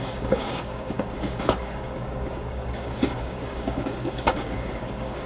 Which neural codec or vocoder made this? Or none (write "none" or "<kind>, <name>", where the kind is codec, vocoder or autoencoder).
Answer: codec, DAC